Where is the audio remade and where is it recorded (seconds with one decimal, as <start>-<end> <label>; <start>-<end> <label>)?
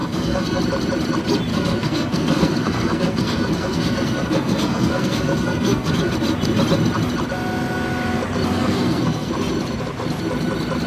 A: 0.0-0.6 remade; 0.6-1.5 recorded; 1.5-5.9 remade; 5.9-8.5 recorded; 8.5-9.3 remade; 9.3-10.9 recorded